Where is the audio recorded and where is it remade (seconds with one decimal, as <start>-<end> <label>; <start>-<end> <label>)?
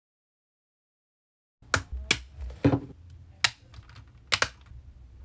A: 0.0-5.2 recorded